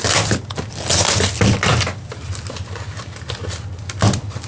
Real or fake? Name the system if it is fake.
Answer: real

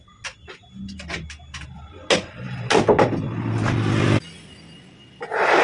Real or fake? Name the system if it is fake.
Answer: real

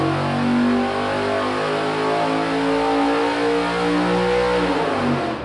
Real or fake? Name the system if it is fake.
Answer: real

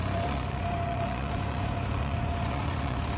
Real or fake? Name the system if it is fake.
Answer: fake, vocoder, Vocos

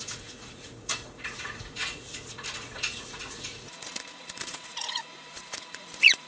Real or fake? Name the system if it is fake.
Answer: fake, vocoder, Vocos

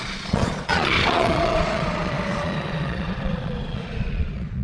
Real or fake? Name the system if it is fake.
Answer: fake, vocoder, Vocos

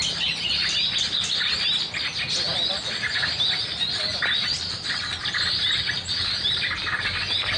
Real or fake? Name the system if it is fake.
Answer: real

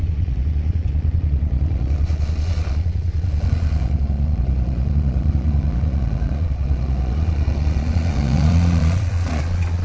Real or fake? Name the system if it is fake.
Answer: fake, vocoder, Vocos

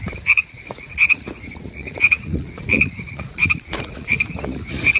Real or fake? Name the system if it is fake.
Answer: fake, vocoder, Vocos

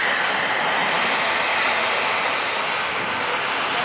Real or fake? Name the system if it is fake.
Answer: real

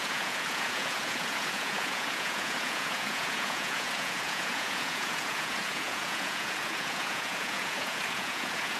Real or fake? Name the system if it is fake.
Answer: fake, vocoder, Vocos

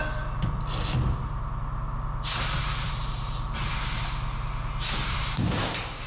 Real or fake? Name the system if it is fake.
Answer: real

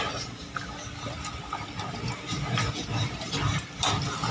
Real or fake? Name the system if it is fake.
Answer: real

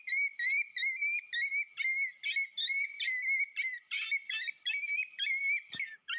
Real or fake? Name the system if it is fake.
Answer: real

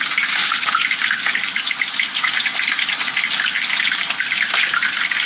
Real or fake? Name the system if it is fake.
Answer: real